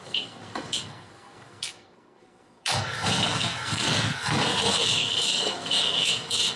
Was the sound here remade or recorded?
remade